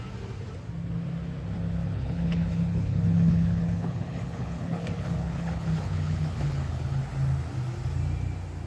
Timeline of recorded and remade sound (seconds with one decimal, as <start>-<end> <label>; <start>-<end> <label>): 0.0-1.8 recorded; 1.8-7.0 remade; 7.0-8.7 recorded